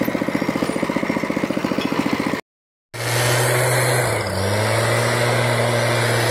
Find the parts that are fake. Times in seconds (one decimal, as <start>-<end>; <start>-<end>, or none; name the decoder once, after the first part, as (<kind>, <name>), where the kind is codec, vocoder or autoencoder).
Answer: none